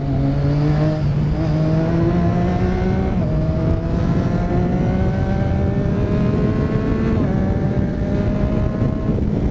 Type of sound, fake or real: real